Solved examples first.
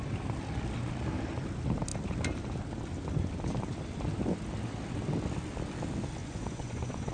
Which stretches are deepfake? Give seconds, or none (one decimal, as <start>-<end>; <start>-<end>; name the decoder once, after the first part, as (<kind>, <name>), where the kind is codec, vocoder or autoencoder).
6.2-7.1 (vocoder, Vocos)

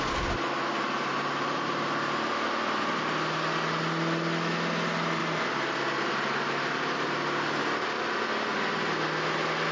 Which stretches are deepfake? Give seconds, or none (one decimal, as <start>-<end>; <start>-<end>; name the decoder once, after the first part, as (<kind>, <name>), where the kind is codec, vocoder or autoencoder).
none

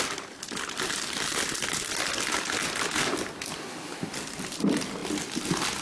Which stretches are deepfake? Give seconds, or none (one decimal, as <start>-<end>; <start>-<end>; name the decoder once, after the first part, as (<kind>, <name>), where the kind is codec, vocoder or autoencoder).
none

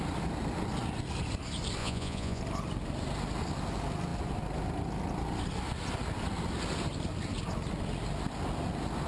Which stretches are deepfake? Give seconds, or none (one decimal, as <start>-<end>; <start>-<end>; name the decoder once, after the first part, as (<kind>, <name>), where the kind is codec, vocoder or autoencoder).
1.8-2.4 (vocoder, Vocos)